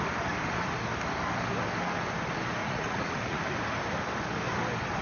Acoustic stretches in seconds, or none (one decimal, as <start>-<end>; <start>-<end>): 0.0-2.6; 3.4-5.0